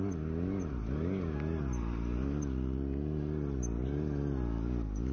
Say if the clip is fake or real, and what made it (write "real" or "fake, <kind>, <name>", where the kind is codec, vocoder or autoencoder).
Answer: real